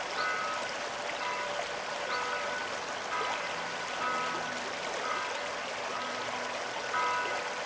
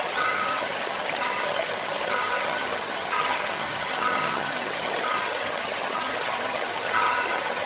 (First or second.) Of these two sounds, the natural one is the first